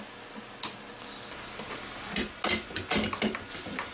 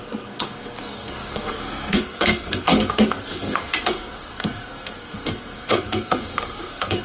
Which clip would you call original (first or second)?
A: first